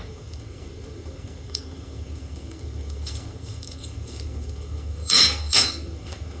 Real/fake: fake